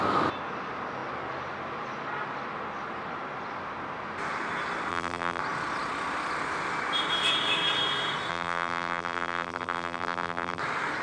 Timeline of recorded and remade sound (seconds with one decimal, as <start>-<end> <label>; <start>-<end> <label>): 0.0-4.9 recorded; 4.9-5.4 remade; 5.4-8.3 recorded; 8.3-10.6 remade; 10.6-11.0 recorded